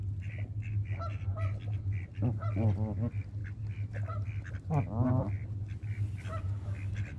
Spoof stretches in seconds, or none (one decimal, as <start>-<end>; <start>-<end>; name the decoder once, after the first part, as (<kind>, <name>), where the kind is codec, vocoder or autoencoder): none